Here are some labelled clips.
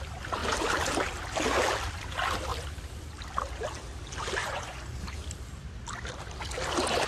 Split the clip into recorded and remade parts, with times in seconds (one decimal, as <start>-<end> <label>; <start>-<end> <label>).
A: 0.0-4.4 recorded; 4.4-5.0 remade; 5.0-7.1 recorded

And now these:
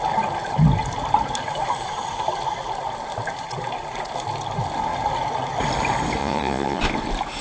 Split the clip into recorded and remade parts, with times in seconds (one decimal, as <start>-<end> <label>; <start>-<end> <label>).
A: 0.0-6.2 recorded; 6.2-6.8 remade; 6.8-7.4 recorded

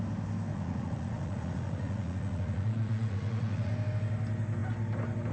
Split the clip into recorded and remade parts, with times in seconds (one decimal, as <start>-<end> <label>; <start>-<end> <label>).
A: 0.0-0.5 recorded; 0.5-3.7 remade; 3.7-5.3 recorded

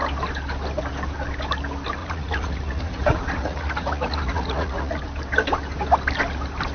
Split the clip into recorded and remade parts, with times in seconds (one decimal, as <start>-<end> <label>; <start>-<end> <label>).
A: 0.0-2.0 recorded; 2.0-5.0 remade; 5.0-6.7 recorded

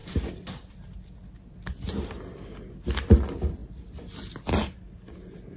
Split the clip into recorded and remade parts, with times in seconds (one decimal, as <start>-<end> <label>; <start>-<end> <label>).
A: 0.0-5.6 recorded